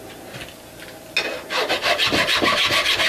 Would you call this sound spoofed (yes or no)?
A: no